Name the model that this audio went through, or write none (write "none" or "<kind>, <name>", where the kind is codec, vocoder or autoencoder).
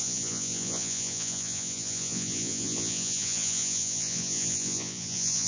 vocoder, Vocos